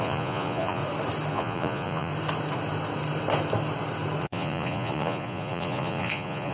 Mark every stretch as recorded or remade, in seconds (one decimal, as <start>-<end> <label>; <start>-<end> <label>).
0.0-0.8 remade; 0.8-1.3 recorded; 1.3-2.1 remade; 2.1-4.2 recorded; 4.2-6.5 remade